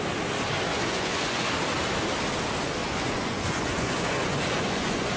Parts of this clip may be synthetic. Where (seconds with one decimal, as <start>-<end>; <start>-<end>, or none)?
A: 0.7-1.5; 2.8-5.2